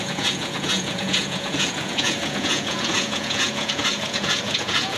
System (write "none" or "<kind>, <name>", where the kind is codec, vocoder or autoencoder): vocoder, Vocos